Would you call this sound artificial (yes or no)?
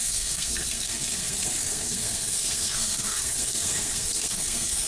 yes